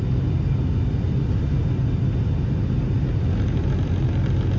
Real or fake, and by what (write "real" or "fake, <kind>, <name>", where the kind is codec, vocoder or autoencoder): real